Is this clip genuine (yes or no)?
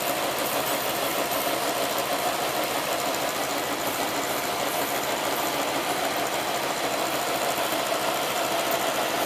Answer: no